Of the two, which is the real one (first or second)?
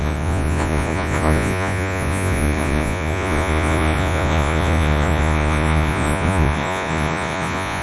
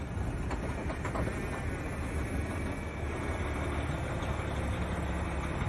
second